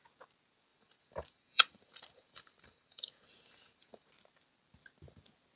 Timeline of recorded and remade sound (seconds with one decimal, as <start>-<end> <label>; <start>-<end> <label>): 0.0-0.7 recorded; 0.7-4.1 remade; 4.1-5.6 recorded